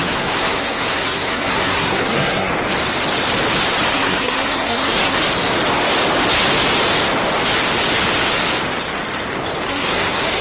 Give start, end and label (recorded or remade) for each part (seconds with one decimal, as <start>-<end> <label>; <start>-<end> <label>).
0.0-2.5 remade; 2.5-3.9 recorded; 3.9-5.2 remade; 5.2-9.7 recorded; 9.7-10.4 remade